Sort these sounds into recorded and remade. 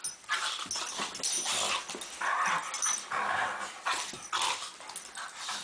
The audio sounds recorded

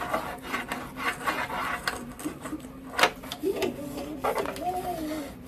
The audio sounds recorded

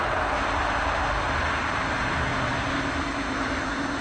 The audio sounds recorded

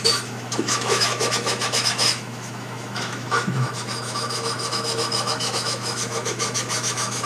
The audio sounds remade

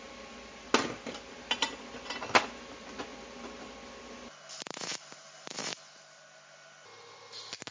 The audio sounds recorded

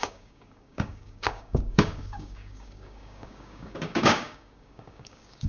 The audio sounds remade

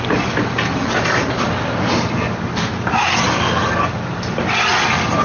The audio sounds recorded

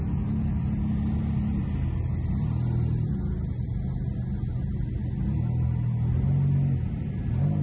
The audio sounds recorded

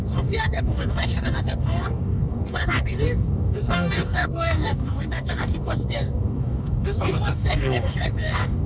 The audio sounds remade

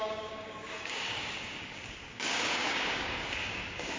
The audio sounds remade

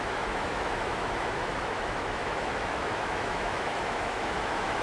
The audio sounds remade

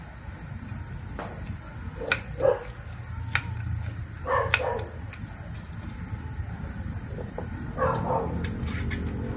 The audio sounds recorded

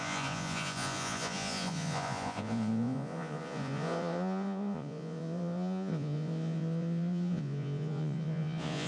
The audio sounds remade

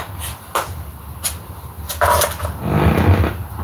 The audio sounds recorded